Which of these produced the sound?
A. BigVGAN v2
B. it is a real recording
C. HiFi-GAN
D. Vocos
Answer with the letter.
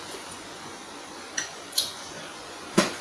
D